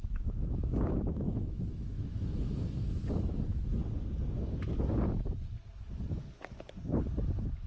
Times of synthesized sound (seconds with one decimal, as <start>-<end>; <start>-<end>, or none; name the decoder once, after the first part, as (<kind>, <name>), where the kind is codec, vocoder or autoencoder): 0.0-3.8 (autoencoder, DAC-VAE)